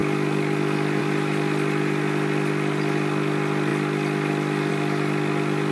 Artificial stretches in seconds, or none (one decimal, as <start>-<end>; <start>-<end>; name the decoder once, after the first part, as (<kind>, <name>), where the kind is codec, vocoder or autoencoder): none